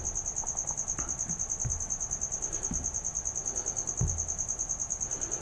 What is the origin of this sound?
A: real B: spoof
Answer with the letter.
A